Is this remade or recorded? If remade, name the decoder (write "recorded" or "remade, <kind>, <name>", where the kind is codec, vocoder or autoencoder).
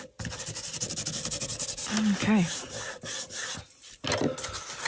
recorded